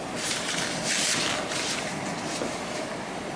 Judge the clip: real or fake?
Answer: real